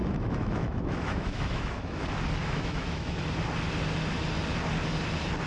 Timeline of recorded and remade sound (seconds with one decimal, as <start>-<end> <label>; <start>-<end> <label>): 0.0-2.0 remade; 2.0-2.4 recorded; 2.4-3.2 remade; 3.2-5.5 recorded